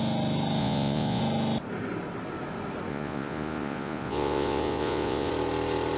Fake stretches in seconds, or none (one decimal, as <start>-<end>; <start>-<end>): 0.6-1.2; 2.9-5.3